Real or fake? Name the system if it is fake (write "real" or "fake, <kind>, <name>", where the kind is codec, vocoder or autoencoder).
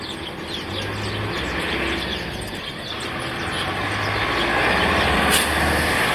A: real